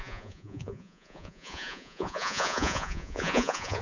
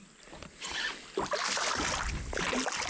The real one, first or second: second